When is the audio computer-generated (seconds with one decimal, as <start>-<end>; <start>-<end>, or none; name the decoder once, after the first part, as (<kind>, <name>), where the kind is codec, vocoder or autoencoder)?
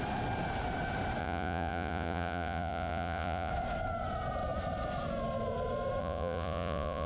1.2-3.5 (vocoder, Vocos); 6.0-7.1